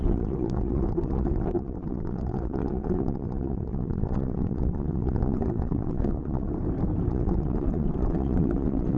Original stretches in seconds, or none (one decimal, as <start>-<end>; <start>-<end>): 6.5-7.1